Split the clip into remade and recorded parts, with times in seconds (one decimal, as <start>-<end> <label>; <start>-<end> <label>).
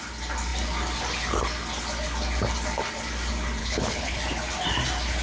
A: 0.0-3.6 recorded; 3.6-4.2 remade; 4.2-5.2 recorded